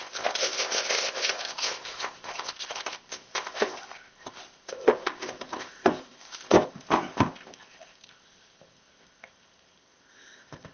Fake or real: fake